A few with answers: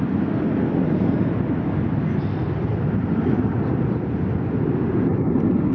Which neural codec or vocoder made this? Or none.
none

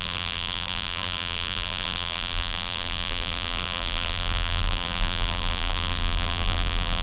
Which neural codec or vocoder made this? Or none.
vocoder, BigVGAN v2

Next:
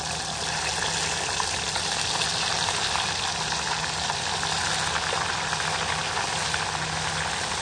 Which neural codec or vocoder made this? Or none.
none